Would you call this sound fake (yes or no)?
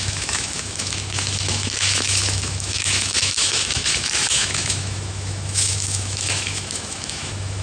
yes